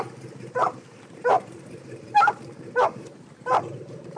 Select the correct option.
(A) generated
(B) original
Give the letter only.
A